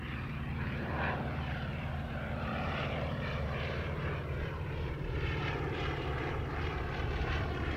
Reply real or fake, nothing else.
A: fake